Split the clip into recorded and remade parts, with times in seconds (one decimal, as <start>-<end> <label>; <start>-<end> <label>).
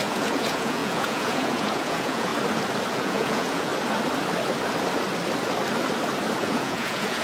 0.0-2.3 remade; 2.3-2.9 recorded; 2.9-3.7 remade; 3.7-6.4 recorded; 6.4-7.2 remade